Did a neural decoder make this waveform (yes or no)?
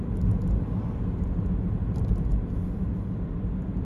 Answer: no